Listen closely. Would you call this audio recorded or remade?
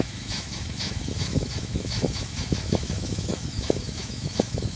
remade